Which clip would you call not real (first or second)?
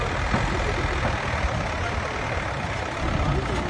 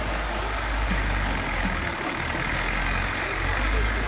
second